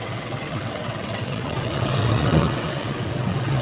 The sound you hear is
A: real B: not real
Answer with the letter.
B